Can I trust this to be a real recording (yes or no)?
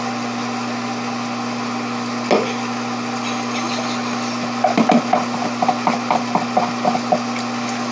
yes